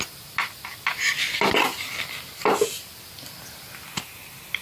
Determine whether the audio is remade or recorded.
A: recorded